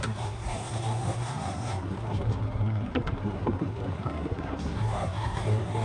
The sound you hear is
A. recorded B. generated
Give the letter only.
B